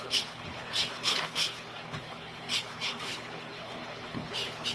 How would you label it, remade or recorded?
remade